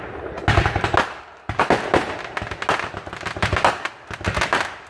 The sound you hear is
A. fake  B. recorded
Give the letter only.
B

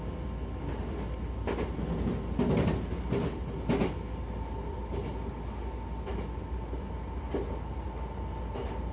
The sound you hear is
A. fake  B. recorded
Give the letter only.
B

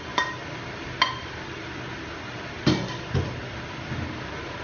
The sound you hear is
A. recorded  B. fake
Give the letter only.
A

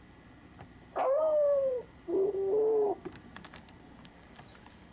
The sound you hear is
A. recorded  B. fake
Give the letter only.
B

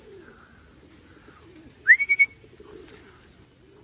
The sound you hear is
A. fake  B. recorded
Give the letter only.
B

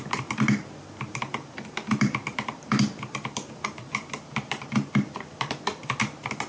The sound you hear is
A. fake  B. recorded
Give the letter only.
A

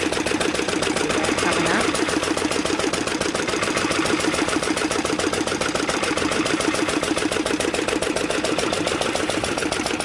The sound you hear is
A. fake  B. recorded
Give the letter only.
A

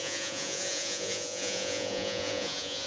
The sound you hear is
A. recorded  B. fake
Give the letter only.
B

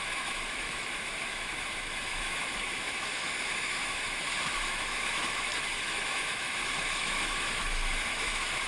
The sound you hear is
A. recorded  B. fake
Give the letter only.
B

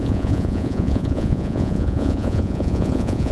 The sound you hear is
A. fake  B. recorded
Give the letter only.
A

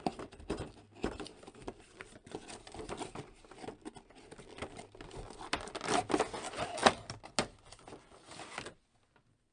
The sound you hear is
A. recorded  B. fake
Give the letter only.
A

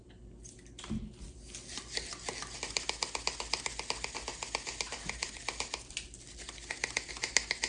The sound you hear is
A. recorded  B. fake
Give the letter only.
A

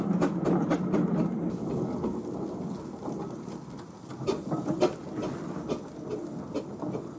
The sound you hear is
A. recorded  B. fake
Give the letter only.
A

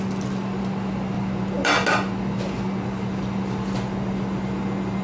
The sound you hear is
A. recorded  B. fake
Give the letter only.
A